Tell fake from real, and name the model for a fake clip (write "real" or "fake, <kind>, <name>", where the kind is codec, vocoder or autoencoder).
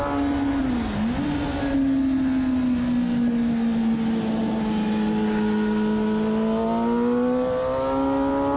real